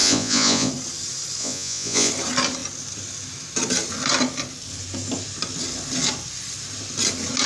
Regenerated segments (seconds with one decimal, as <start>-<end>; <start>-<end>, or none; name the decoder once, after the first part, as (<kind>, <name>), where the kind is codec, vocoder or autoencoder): 0.0-0.7 (vocoder, Vocos); 1.4-2.1